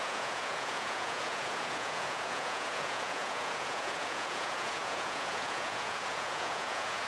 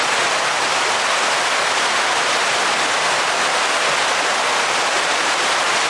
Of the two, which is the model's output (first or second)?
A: first